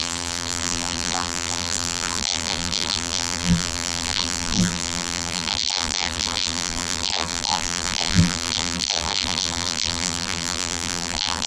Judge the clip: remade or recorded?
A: remade